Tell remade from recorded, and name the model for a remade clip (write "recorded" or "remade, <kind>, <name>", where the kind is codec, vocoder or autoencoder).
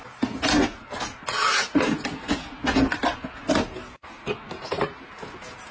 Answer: recorded